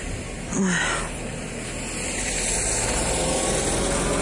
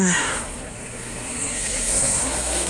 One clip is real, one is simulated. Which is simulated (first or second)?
second